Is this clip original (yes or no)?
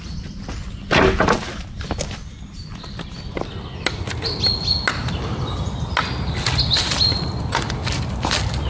yes